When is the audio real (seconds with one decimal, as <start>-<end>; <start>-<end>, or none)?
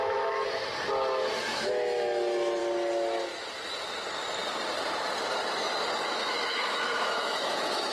0.7-1.4; 2.6-6.0